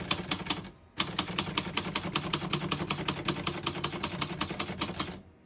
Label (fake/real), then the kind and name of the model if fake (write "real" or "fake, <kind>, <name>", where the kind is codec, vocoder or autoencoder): real